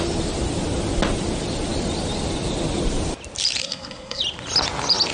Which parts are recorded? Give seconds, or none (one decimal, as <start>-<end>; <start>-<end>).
0.0-3.6; 4.2-5.1